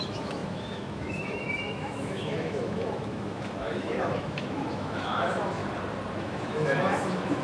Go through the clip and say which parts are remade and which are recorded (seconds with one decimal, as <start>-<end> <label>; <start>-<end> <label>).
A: 0.0-5.6 remade; 5.6-6.2 recorded; 6.2-7.4 remade